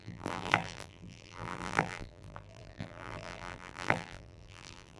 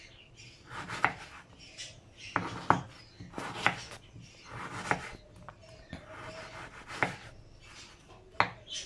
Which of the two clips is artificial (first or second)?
first